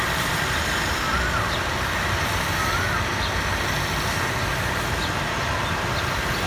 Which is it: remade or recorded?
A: recorded